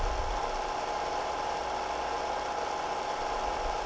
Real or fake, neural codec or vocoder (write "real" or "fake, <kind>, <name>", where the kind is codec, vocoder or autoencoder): real